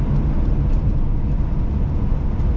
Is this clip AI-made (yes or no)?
no